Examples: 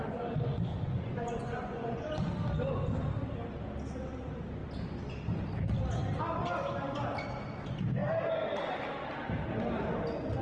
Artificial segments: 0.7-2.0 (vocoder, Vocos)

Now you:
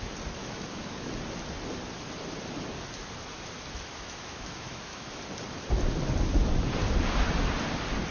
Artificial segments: 0.4-1.1 (autoencoder, DAC-VAE); 3.9-5.2

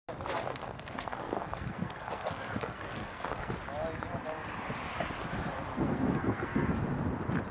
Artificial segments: 0.5-3.5 (codec, SNAC); 5.7-6.8

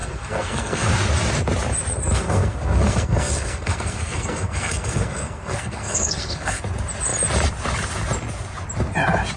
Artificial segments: 0.0-0.9 (codec, SNAC); 2.0-6.6

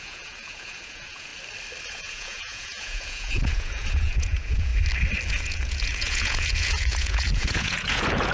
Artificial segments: 0.0-1.3 (vocoder, Vocos); 1.9-4.7; 5.3-8.3

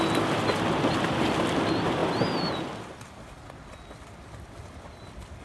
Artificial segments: none

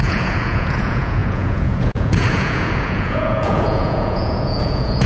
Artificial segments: 0.0-5.1 (vocoder, Vocos)

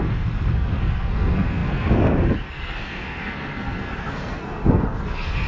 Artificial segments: 0.0-5.5 (codec, SNAC)